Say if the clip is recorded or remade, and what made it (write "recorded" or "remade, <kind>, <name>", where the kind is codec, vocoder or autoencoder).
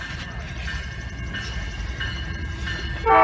recorded